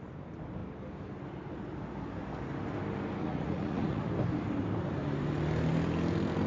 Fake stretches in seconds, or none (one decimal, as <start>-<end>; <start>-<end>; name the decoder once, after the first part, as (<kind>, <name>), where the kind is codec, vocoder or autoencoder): 3.2-4.1 (vocoder, Vocos)